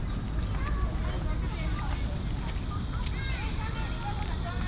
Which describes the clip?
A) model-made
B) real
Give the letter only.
B